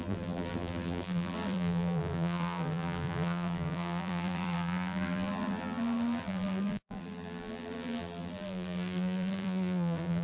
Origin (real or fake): fake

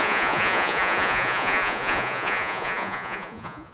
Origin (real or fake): fake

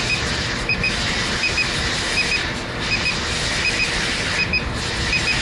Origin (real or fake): real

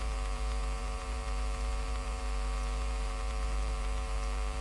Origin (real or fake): fake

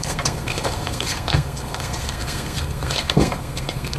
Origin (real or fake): fake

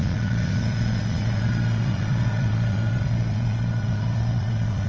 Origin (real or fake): fake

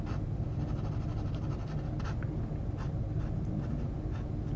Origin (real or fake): real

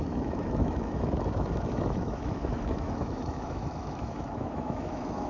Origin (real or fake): fake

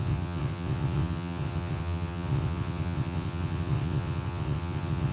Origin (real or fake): fake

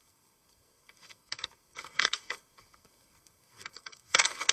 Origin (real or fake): fake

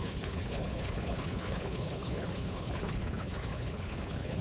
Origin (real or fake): fake